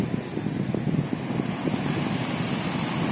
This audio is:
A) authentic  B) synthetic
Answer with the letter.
A